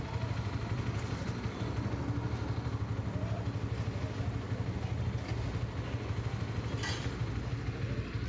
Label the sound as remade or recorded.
recorded